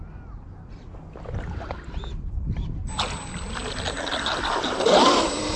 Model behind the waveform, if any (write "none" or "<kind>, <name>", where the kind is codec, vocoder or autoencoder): none